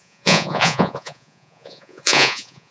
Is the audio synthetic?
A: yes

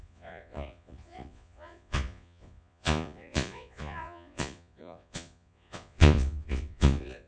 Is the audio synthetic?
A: yes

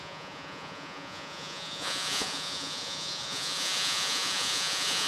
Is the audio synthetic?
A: yes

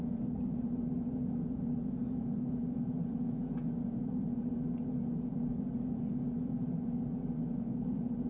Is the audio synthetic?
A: yes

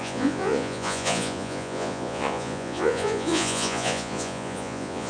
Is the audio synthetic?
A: yes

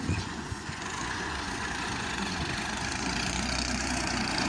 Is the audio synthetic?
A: yes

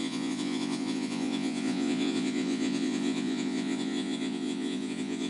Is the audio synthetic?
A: yes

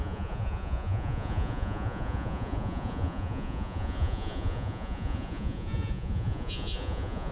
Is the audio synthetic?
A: yes